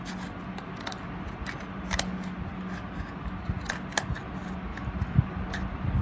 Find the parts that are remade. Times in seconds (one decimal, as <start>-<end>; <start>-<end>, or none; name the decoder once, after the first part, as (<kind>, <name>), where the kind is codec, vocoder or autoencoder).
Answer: none